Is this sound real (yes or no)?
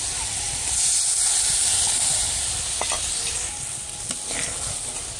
yes